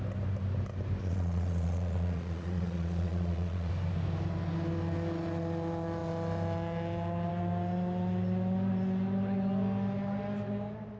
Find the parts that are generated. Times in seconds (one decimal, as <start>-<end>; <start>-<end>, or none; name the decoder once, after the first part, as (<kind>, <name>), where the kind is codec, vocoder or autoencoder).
1.0-3.7 (vocoder, Vocos)

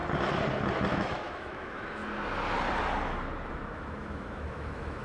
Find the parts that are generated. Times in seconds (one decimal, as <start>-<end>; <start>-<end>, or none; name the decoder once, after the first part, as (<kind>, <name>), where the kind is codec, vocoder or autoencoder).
0.9-2.0 (autoencoder, DAC-VAE); 3.5-5.0

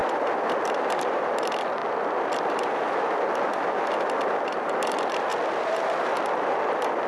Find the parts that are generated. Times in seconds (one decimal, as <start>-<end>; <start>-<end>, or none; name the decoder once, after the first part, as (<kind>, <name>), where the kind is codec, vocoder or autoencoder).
none

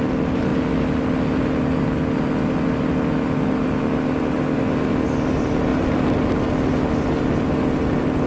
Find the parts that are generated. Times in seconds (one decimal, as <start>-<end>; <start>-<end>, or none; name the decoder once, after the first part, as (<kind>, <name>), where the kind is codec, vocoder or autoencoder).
none

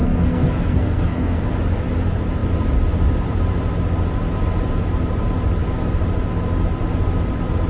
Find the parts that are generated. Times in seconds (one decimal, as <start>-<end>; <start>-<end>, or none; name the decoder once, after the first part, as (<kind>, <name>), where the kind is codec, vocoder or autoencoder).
0.0-1.4 (codec, SNAC)

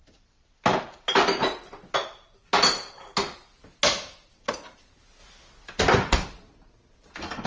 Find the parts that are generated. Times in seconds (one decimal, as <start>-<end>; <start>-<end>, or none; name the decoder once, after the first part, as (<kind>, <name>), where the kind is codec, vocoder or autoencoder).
none

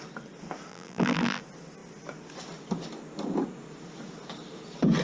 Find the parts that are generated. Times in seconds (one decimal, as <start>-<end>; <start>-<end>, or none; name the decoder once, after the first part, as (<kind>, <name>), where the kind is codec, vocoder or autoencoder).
0.7-1.4 (vocoder, BigVGAN v2)

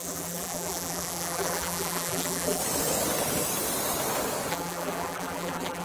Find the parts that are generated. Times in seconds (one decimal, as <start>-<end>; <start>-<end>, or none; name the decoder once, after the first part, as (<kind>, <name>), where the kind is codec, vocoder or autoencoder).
0.0-2.6 (vocoder, BigVGAN v2); 4.5-5.8